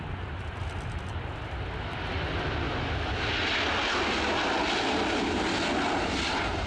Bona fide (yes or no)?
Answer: yes